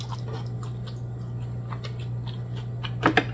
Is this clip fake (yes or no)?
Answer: no